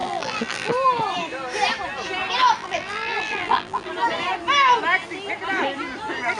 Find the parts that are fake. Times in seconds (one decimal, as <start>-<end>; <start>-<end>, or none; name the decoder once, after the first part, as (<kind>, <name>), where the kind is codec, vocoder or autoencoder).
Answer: 0.0-0.7 (vocoder, BigVGAN v2); 2.6-3.9